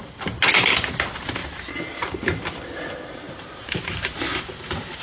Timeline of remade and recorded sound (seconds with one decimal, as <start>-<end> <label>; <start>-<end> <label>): 0.0-1.4 recorded; 1.4-4.4 remade; 4.4-5.0 recorded